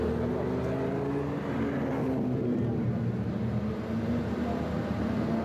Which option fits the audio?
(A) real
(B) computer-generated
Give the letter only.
A